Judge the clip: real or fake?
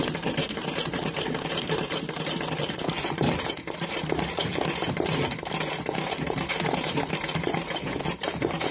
fake